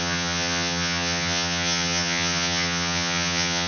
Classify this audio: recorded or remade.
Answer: remade